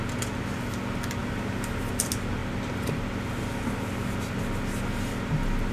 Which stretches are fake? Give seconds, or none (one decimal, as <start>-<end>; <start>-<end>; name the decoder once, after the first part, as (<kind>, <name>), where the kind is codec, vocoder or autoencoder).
1.2-2.0 (vocoder, BigVGAN v2)